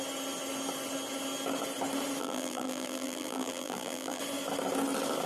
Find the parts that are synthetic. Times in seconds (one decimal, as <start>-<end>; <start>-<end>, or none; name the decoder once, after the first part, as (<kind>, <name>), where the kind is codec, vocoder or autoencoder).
2.2-4.2 (vocoder, BigVGAN v2)